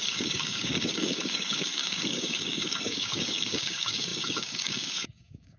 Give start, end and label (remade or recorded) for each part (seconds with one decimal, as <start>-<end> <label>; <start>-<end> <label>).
0.0-5.6 remade